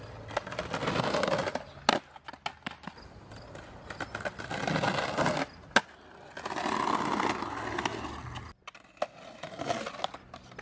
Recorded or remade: recorded